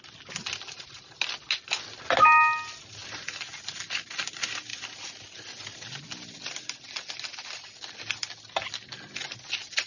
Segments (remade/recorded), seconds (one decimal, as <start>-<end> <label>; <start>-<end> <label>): 0.0-9.9 recorded